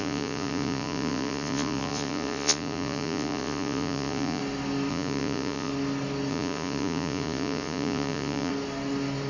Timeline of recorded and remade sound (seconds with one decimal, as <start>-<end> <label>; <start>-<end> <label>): 0.0-4.4 remade; 4.4-4.9 recorded; 4.9-5.7 remade; 5.7-6.3 recorded; 6.3-8.5 remade; 8.5-9.3 recorded